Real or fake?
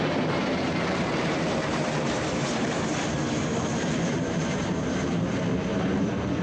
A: fake